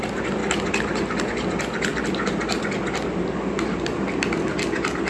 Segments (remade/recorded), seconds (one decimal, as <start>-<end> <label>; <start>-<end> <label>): 0.0-5.1 recorded